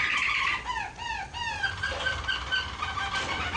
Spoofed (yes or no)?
no